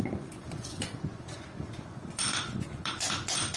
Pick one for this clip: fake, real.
fake